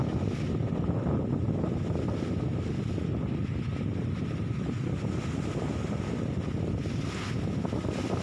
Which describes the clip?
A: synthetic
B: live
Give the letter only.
B